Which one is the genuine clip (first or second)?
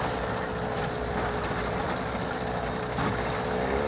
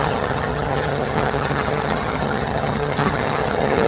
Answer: first